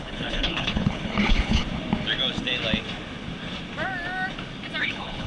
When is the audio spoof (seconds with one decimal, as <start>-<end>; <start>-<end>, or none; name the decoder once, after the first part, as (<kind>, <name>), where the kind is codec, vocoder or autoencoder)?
0.0-1.6 (codec, HILCodec); 4.8-5.3